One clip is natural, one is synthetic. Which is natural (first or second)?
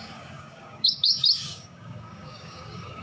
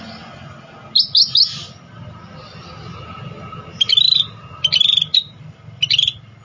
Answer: second